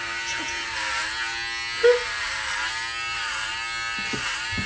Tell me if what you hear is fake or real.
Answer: real